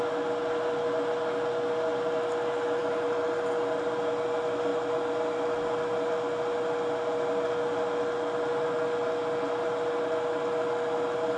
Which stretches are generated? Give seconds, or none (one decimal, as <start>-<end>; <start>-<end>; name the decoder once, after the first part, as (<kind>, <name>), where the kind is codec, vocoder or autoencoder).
none